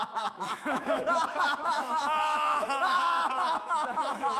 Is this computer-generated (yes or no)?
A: yes